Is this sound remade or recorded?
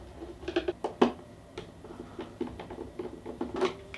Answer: recorded